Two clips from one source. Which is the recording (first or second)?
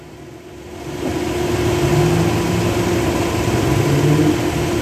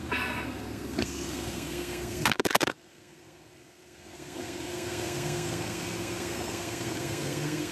first